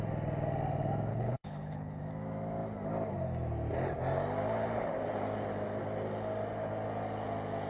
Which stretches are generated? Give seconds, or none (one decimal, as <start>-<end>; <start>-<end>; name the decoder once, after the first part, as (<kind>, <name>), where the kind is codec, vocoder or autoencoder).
1.1-2.0 (codec, HILCodec)